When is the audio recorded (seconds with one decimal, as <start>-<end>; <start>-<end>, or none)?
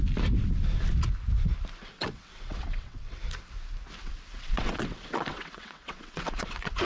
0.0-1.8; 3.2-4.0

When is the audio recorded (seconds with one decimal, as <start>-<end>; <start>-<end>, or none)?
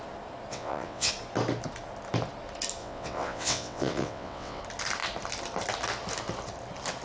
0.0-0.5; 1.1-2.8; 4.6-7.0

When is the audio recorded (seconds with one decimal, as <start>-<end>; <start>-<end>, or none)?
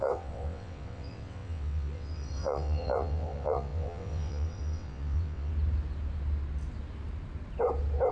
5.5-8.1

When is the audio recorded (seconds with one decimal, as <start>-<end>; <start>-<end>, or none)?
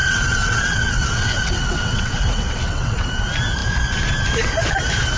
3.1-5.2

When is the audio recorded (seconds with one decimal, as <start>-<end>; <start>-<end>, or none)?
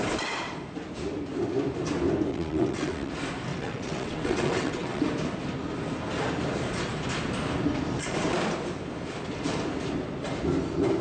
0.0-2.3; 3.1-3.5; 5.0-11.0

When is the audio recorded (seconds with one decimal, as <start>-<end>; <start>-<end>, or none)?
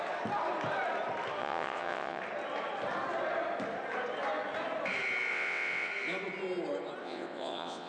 0.0-1.4; 2.2-5.3; 5.9-7.0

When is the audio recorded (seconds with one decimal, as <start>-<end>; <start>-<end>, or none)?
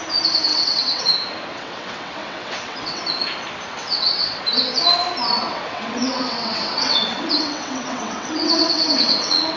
0.0-0.5; 1.0-1.5; 3.0-3.8; 4.4-5.4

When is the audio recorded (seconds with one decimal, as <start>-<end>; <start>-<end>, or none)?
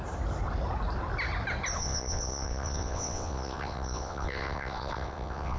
0.0-1.8